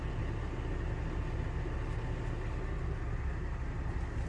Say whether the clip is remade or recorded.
recorded